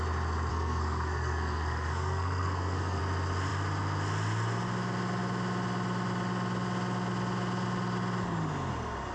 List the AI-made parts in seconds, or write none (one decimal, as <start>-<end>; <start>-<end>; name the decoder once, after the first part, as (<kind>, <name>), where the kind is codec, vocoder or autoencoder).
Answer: 0.5-3.0 (codec, SNAC)